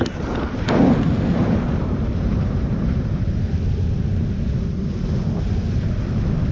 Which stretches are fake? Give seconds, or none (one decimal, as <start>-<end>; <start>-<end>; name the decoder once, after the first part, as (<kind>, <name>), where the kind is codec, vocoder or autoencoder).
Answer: 1.4-3.5 (vocoder, BigVGAN v2)